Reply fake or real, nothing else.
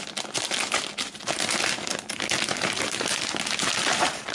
real